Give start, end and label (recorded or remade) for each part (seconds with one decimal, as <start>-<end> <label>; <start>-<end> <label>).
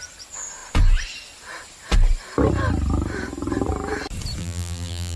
0.0-4.4 recorded; 4.4-5.2 remade